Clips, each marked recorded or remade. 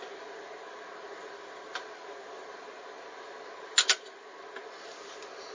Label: recorded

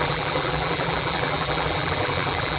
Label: remade